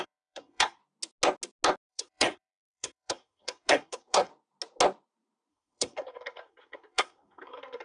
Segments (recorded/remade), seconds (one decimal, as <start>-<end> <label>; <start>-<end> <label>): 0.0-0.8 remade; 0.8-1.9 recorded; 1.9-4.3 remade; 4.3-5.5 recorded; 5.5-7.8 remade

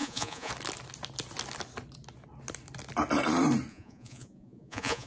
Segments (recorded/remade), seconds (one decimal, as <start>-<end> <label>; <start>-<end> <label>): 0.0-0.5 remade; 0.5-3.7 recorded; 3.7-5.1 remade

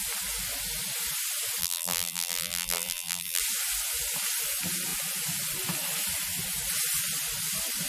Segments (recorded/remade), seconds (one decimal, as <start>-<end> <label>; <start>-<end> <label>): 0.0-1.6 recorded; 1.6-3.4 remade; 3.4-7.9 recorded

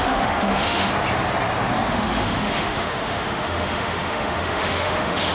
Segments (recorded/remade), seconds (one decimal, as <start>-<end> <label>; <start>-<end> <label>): 0.0-0.9 remade; 0.9-1.9 recorded; 1.9-5.3 remade

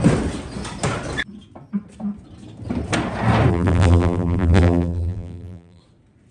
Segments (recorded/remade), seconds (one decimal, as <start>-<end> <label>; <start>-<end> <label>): 0.0-3.5 recorded; 3.5-5.8 remade; 5.8-6.3 recorded

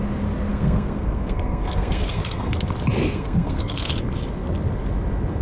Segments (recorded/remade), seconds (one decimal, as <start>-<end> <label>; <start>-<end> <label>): 0.0-0.5 recorded; 0.5-2.5 remade; 2.5-3.0 recorded; 3.0-3.9 remade; 3.9-5.4 recorded

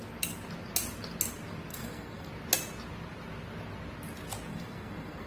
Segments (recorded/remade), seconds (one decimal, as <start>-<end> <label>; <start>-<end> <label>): 0.0-1.7 recorded; 1.7-2.3 remade; 2.3-4.5 recorded; 4.5-5.3 remade

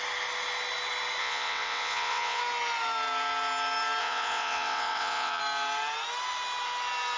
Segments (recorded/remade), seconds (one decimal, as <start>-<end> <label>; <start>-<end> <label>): 0.0-1.2 recorded; 1.2-2.4 remade; 2.4-4.0 recorded; 4.0-5.4 remade; 5.4-7.2 recorded